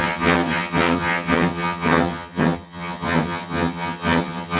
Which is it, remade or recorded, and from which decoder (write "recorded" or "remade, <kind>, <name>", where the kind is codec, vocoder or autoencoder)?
remade, vocoder, HiFi-GAN